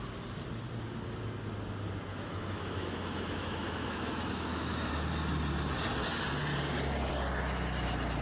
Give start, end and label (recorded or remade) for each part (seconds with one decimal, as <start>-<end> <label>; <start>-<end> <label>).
0.0-2.1 recorded; 2.1-4.9 remade; 4.9-8.2 recorded

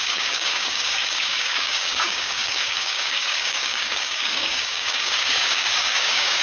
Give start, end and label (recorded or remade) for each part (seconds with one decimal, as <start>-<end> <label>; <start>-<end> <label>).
0.0-6.4 remade

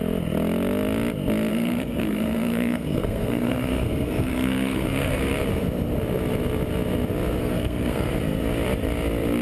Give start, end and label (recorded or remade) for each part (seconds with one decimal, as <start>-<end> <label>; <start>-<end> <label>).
0.0-1.5 recorded; 1.5-5.2 remade; 5.2-7.4 recorded; 7.4-8.1 remade; 8.1-9.4 recorded

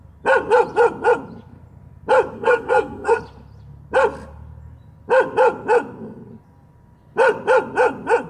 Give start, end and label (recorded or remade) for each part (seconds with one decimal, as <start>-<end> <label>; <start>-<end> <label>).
0.0-2.3 recorded; 2.3-3.2 remade; 3.2-8.3 recorded

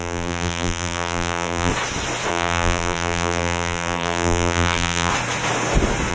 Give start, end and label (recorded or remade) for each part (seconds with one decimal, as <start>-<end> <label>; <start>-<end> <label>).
0.0-1.7 remade; 1.7-2.3 recorded; 2.3-5.1 remade; 5.1-6.1 recorded

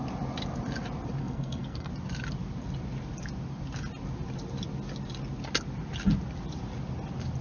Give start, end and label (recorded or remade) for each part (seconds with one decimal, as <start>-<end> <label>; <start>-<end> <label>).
0.0-1.2 recorded; 1.2-1.9 remade; 1.9-7.4 recorded